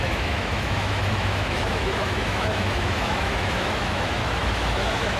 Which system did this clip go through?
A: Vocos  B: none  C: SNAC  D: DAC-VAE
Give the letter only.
D